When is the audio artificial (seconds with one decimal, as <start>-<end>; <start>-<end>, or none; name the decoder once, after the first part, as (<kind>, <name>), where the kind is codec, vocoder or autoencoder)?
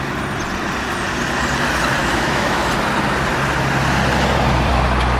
2.0-2.7 (autoencoder, DAC-VAE)